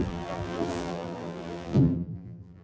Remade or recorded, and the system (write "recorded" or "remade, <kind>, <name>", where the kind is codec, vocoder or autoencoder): remade, vocoder, BigVGAN v2